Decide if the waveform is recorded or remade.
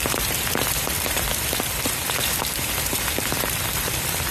remade